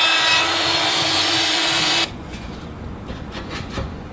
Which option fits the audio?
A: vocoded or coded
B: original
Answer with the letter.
A